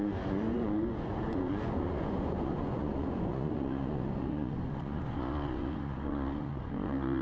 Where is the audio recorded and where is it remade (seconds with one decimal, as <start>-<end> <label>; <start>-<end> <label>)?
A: 0.0-7.2 remade